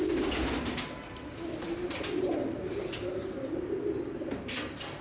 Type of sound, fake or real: real